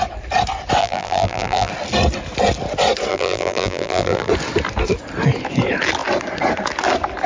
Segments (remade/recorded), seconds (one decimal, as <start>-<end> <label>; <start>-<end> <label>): 0.0-0.8 recorded; 0.8-1.7 remade; 1.7-3.1 recorded; 3.1-4.3 remade; 4.3-7.3 recorded